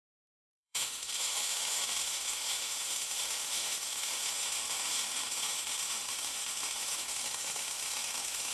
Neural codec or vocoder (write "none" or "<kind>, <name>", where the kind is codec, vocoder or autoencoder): autoencoder, DAC-VAE